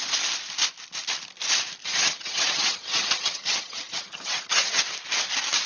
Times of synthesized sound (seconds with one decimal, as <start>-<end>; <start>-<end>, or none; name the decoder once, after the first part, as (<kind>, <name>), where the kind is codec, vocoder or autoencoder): 1.8-4.8 (vocoder, HiFi-GAN)